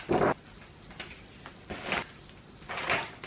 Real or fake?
real